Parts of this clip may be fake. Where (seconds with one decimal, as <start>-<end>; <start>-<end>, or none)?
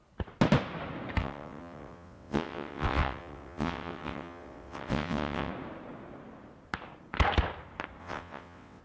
1.2-5.5; 8.0-8.8